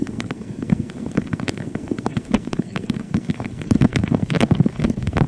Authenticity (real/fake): fake